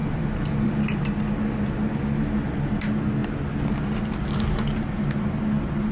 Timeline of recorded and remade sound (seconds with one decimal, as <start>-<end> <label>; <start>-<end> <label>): 0.0-1.1 remade; 1.1-5.9 recorded

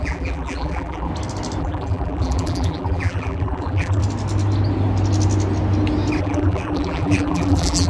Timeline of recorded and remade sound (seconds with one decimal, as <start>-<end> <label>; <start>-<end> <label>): 0.0-1.1 remade; 1.1-1.6 recorded; 1.6-4.0 remade; 4.0-6.2 recorded; 6.2-7.9 remade

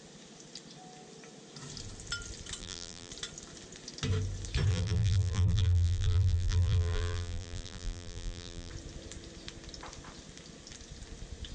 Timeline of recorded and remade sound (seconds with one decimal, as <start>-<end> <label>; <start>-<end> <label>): 0.0-2.6 recorded; 2.6-3.1 remade; 3.1-4.7 recorded; 4.7-8.7 remade; 8.7-11.5 recorded

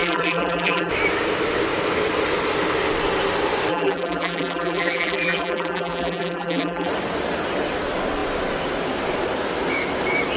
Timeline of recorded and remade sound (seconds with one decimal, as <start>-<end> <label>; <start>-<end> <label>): 0.0-0.9 remade; 0.9-3.7 recorded; 3.7-6.9 remade; 6.9-10.4 recorded

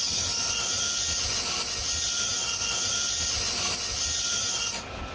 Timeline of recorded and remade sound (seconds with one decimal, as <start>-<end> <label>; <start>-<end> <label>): 0.0-5.1 recorded

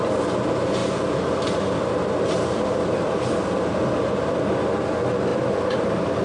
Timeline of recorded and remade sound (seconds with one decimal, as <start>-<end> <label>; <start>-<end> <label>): 0.0-0.8 recorded; 0.8-4.5 remade; 4.5-5.3 recorded; 5.3-6.2 remade